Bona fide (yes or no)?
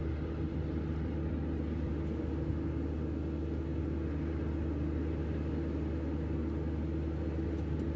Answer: yes